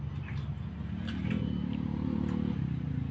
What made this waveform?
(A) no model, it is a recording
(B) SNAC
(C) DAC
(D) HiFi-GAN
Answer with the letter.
A